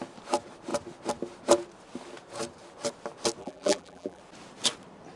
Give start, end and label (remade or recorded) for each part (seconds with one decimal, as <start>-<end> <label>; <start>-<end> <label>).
0.0-3.4 recorded; 3.4-4.2 remade; 4.2-5.2 recorded